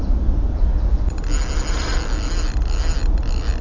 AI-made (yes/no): no